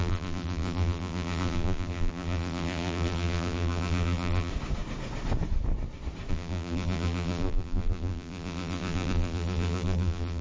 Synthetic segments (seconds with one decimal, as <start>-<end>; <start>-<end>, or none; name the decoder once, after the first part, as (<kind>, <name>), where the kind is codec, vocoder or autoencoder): 0.0-4.5 (vocoder, BigVGAN v2); 6.3-10.4